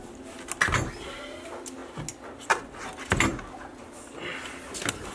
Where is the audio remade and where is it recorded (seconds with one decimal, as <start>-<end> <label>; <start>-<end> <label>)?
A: 0.0-5.1 recorded